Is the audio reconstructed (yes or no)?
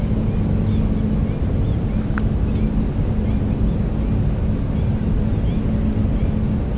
no